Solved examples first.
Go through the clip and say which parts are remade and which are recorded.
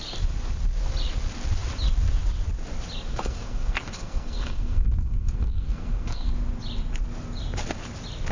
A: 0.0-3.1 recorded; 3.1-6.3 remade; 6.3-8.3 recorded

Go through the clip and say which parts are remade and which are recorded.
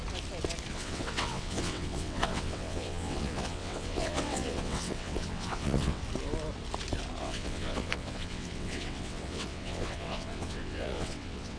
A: 0.0-0.7 recorded; 0.7-6.0 remade; 6.0-7.2 recorded; 7.2-11.6 remade